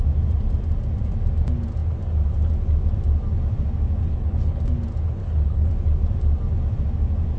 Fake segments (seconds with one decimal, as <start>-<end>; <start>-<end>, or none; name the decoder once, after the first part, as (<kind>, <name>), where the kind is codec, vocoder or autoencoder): 4.0-4.6 (codec, HILCodec); 5.2-5.7